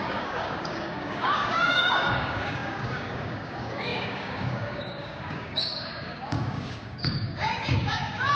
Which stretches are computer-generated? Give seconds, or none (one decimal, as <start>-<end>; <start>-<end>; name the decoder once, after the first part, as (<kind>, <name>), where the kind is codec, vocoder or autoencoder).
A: 0.0-8.3 (codec, DAC)